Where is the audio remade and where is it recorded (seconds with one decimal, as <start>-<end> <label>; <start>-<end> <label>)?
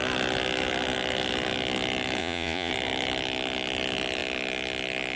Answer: 0.0-2.2 recorded; 2.2-2.7 remade; 2.7-5.2 recorded